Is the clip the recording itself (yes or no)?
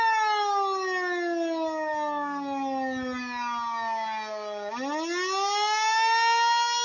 yes